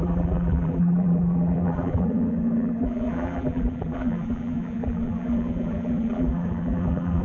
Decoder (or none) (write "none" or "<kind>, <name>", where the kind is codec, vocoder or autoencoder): vocoder, BigVGAN v2